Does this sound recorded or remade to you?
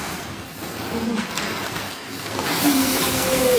remade